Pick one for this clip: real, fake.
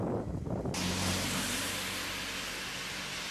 real